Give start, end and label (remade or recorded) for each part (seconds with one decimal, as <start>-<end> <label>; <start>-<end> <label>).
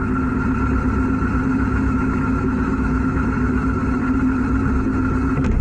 0.0-1.5 recorded; 1.5-3.8 remade; 3.8-5.6 recorded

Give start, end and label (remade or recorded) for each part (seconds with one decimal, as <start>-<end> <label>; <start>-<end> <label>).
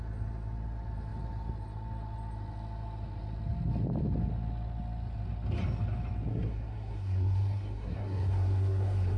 0.0-6.3 recorded; 6.3-9.2 remade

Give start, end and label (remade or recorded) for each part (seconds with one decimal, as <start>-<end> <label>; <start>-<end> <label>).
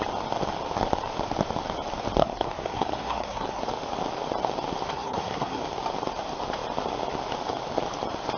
0.0-2.2 recorded; 2.2-3.6 remade; 3.6-4.9 recorded; 4.9-5.6 remade; 5.6-8.4 recorded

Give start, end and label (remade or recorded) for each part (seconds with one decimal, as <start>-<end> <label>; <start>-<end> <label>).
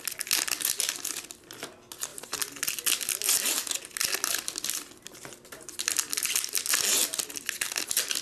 0.0-8.2 recorded